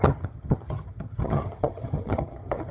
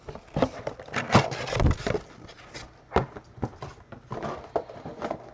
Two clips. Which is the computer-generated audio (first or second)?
first